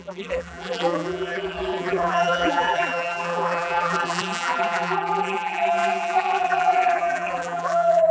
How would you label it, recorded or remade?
remade